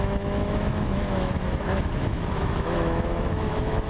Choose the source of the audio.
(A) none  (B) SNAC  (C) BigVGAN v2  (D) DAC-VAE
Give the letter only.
D